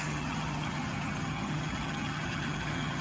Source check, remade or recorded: remade